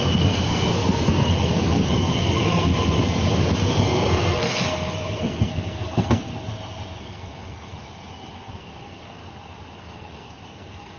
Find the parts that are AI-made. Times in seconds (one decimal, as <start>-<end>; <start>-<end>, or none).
0.0-2.7; 3.6-6.3; 7.0-7.8; 8.5-9.2; 9.8-11.0